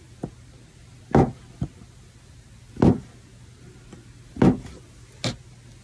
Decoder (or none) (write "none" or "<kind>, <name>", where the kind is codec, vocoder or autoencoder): none